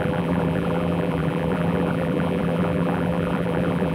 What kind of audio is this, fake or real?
fake